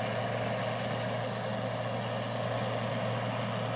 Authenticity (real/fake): real